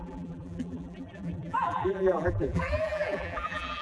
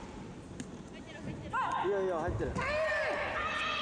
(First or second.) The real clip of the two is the second